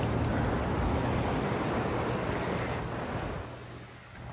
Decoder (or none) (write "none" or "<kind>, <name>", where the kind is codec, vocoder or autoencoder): none